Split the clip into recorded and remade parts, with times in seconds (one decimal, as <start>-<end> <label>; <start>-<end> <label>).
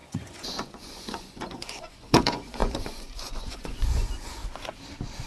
0.0-4.4 remade; 4.4-5.3 recorded